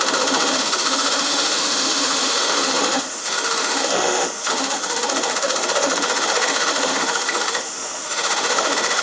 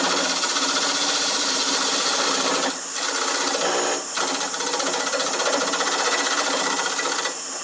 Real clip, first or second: second